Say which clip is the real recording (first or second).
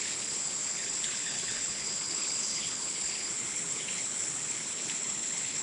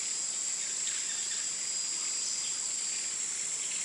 second